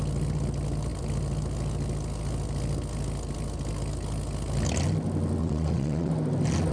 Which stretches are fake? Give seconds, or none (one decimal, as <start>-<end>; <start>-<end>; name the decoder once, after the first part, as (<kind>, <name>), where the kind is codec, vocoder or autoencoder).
5.4-6.1 (vocoder, WaveNeXt)